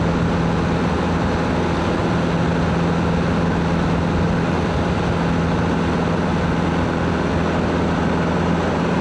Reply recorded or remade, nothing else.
recorded